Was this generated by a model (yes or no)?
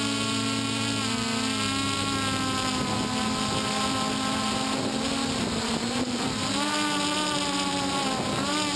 no